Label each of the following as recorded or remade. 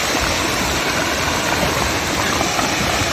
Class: recorded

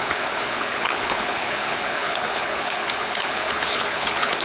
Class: remade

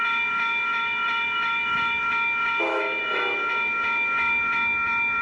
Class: remade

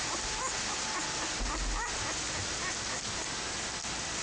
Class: recorded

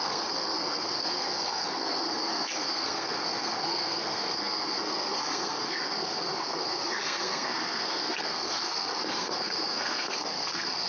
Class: remade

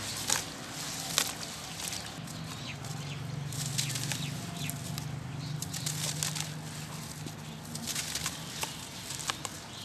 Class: recorded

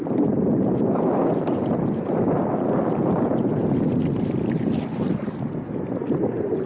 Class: recorded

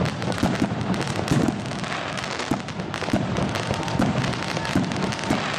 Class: recorded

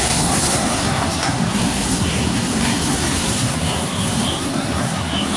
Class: remade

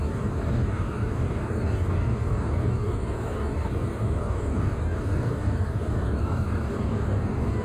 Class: remade